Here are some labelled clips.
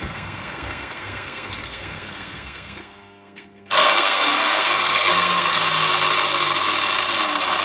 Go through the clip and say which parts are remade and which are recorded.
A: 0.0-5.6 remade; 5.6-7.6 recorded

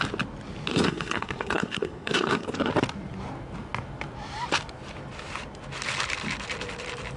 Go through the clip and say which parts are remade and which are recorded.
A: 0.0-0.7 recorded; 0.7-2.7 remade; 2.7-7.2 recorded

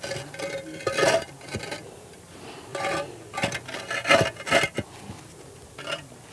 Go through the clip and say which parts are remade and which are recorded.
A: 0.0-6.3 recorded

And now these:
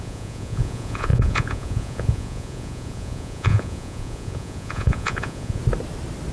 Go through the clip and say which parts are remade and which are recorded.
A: 0.0-5.6 remade; 5.6-6.3 recorded